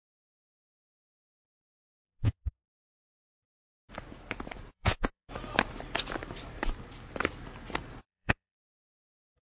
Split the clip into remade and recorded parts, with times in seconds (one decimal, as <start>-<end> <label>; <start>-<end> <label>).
0.0-3.9 remade; 3.9-4.7 recorded; 4.7-5.3 remade; 5.3-8.0 recorded; 8.0-9.6 remade